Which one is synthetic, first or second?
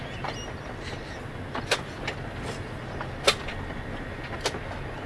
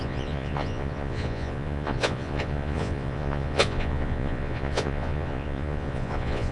second